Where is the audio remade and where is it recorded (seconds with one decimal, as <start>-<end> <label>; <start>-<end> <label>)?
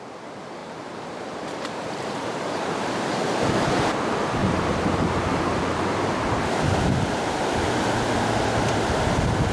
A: 0.0-0.6 recorded; 0.6-2.4 remade; 2.4-4.4 recorded; 4.4-7.6 remade; 7.6-9.5 recorded